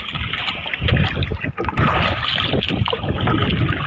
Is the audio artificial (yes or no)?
no